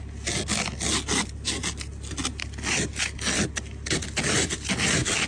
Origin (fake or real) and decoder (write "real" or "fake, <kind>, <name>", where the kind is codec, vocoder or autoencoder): real